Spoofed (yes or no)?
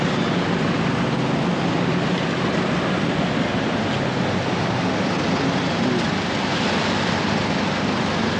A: no